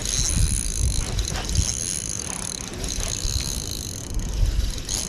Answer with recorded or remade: recorded